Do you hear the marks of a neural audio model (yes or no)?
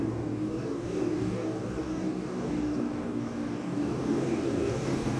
yes